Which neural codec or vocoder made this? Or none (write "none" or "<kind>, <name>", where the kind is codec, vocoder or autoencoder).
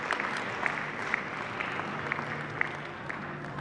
none